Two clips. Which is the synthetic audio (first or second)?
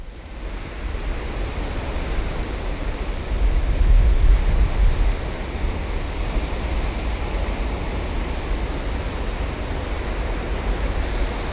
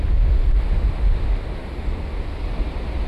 second